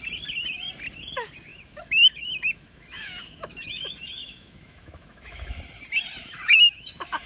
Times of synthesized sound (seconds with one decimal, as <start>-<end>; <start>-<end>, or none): 1.5-5.6; 6.2-7.3